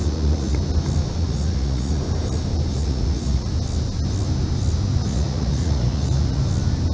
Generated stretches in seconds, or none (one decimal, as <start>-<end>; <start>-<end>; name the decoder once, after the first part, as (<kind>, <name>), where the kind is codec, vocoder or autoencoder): 0.0-0.6 (vocoder, Vocos); 1.2-2.0; 2.7-3.5; 5.1-6.4